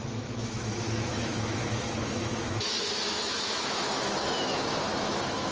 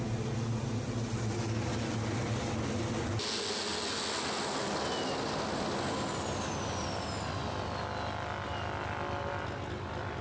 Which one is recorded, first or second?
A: second